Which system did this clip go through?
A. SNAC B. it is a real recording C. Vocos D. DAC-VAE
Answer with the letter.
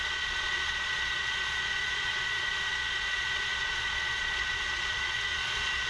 C